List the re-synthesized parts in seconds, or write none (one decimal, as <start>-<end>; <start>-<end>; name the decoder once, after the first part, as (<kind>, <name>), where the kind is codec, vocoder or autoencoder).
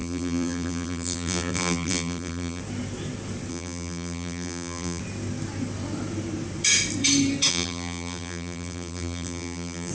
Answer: 0.0-2.6 (vocoder, BigVGAN v2); 3.5-5.0; 7.5-9.9